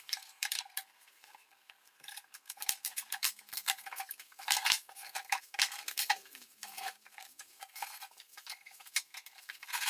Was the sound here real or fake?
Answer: fake